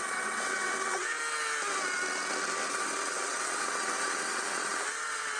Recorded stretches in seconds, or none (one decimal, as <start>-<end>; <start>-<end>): 1.2-2.7